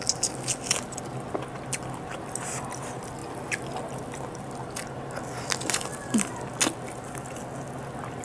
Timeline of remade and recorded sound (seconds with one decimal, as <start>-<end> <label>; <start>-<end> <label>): 0.0-8.2 recorded